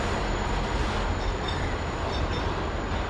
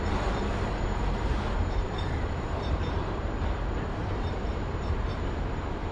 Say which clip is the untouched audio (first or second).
first